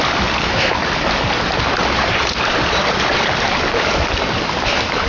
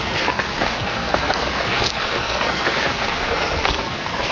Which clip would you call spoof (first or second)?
second